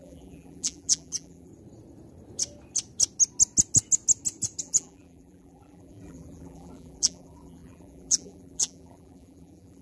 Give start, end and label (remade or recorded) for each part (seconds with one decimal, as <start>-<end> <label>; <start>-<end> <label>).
0.0-1.5 remade; 1.5-4.6 recorded; 4.6-9.8 remade